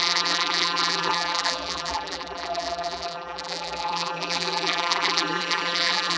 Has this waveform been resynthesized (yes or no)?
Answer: yes